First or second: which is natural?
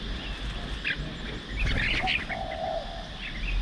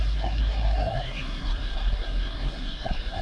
first